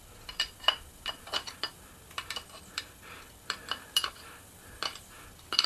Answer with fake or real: fake